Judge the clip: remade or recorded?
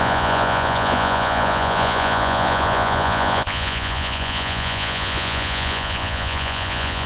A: remade